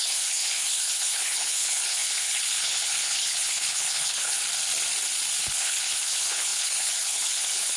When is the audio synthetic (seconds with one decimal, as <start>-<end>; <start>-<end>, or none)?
0.0-4.4; 5.4-7.8